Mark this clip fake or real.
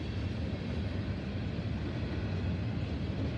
real